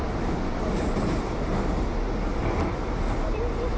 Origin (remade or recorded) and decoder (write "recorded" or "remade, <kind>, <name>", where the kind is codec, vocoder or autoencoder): recorded